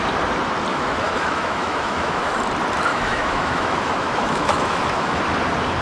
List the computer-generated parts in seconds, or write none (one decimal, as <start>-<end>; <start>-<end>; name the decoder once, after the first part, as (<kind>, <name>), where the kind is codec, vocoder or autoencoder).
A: 0.7-2.4 (autoencoder, DAC-VAE); 2.9-5.2